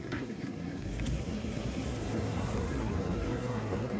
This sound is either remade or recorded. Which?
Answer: remade